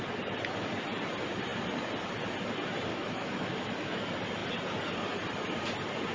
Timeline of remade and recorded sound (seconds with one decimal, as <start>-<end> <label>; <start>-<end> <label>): 0.0-2.9 recorded; 2.9-4.0 remade; 4.0-6.1 recorded